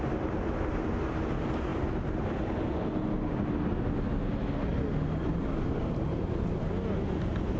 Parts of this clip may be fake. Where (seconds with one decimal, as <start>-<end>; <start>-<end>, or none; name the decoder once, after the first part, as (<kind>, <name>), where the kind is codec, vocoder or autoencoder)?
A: none